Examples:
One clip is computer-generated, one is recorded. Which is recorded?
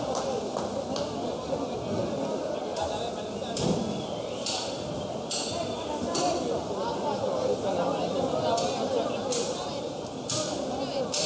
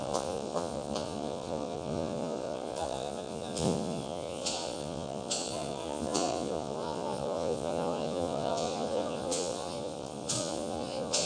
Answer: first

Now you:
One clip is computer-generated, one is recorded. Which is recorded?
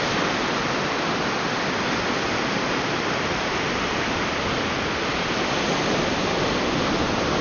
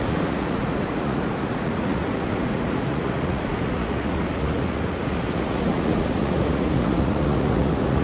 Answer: first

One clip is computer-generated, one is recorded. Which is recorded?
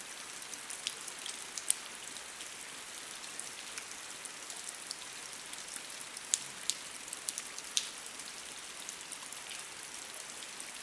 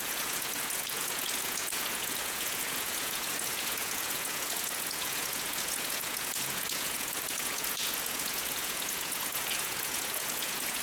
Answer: first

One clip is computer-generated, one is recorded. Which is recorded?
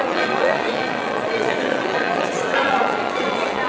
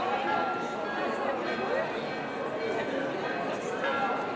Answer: second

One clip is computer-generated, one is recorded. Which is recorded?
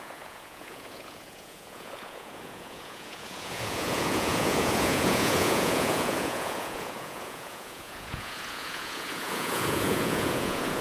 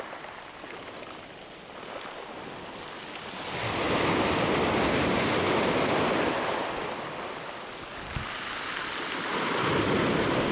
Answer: second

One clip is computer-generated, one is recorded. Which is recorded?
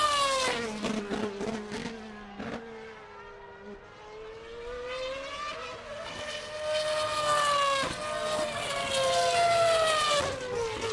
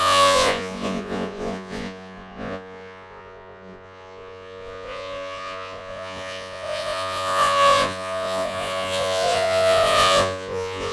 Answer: first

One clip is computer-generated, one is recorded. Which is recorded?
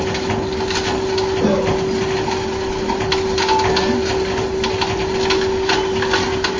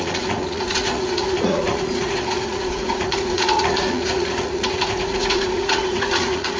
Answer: first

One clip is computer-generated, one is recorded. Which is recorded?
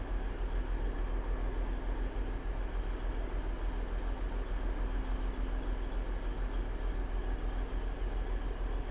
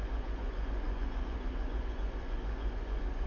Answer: first